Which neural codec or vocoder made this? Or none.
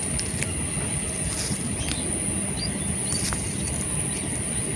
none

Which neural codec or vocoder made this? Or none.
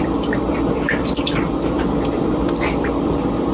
vocoder, BigVGAN v2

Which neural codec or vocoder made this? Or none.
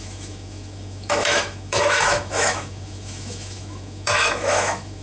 autoencoder, DAC-VAE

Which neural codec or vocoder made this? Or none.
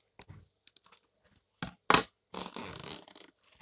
none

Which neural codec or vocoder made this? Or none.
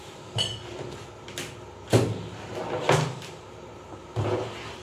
none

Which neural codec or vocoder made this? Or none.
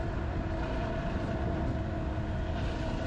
none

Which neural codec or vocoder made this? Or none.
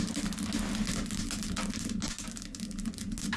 none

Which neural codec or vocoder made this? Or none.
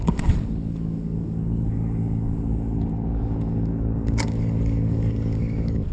codec, DAC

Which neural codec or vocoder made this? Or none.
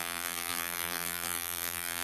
vocoder, BigVGAN v2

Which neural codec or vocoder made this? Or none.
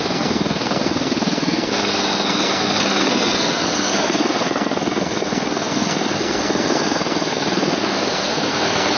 codec, SNAC